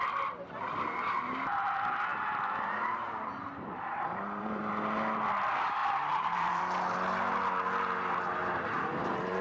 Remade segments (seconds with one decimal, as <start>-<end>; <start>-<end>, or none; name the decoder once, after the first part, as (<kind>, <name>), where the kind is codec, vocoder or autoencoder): 2.1-4.7 (vocoder, BigVGAN v2); 5.8-6.6; 8.4-9.4